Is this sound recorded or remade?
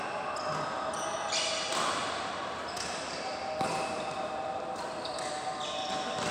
recorded